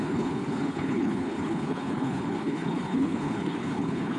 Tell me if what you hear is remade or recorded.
remade